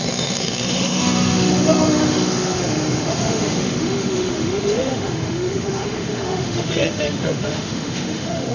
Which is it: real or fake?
fake